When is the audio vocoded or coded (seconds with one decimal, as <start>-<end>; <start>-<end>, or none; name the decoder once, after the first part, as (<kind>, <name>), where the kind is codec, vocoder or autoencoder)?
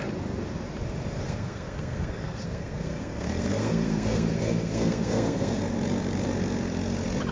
1.2-5.6 (codec, SNAC)